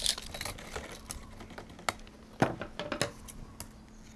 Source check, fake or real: real